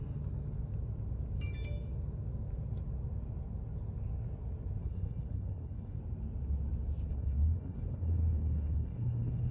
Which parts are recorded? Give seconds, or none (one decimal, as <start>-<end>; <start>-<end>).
0.0-4.8; 6.0-7.1